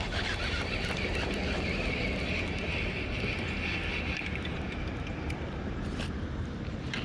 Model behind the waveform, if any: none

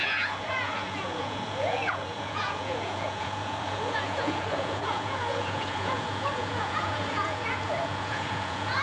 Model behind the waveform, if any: vocoder, Vocos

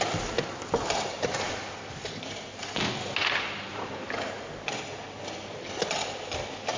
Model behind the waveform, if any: none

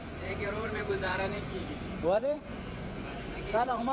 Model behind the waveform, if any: vocoder, Vocos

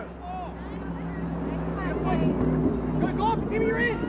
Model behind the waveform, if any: none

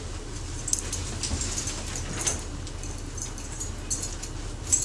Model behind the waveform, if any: none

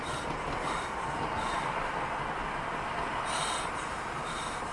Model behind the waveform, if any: none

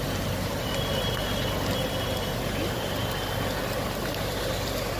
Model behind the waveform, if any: none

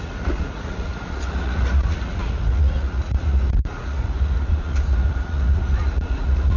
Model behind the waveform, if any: vocoder, Vocos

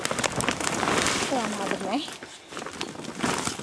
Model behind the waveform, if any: none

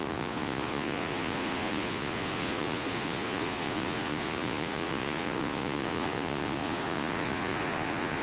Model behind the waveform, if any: vocoder, Vocos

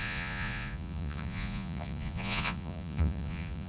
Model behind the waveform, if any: vocoder, Vocos